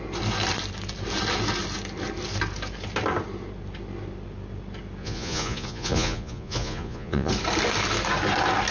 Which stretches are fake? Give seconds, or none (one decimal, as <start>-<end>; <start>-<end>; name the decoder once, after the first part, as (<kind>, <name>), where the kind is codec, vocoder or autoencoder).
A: 5.0-7.3 (vocoder, Vocos)